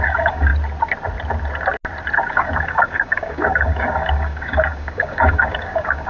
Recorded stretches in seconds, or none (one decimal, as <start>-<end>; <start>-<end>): 0.5-2.3